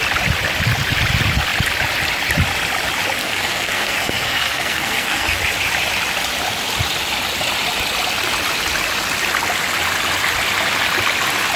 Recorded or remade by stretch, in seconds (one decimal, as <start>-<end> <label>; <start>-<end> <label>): 0.0-3.2 recorded; 3.2-5.4 remade; 5.4-11.6 recorded